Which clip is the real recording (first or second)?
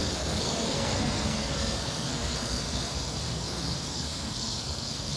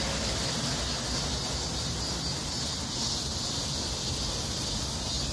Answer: second